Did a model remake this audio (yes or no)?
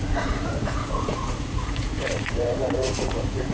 yes